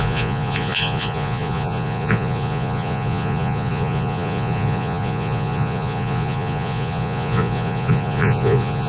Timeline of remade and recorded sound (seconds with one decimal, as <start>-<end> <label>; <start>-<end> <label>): 0.0-8.9 remade